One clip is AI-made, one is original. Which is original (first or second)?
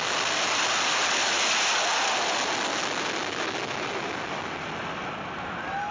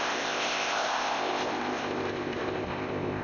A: first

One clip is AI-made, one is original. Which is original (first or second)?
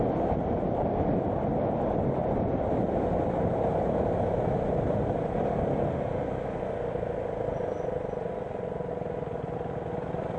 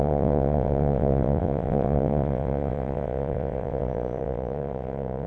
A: first